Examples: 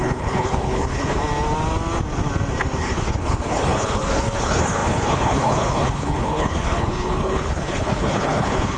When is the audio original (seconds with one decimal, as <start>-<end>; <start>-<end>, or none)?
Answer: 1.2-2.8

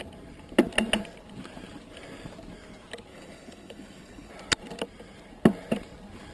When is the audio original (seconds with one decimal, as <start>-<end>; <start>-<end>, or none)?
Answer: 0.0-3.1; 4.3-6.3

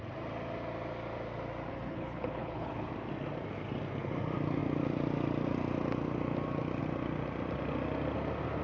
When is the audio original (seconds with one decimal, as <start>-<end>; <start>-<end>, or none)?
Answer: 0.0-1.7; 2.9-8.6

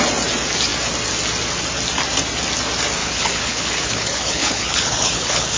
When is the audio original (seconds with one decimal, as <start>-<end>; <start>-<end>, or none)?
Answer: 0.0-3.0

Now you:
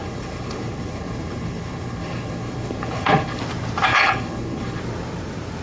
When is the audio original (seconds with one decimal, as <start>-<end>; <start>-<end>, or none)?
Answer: 3.4-3.9; 4.8-5.6